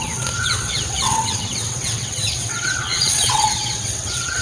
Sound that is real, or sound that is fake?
fake